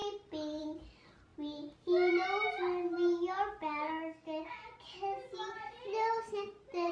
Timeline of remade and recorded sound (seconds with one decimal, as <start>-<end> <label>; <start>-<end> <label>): 0.0-3.6 recorded; 3.6-4.5 remade; 4.5-6.9 recorded